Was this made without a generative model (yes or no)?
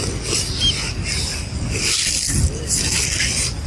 yes